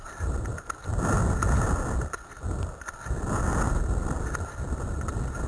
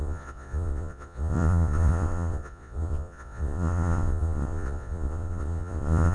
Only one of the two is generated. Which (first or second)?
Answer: second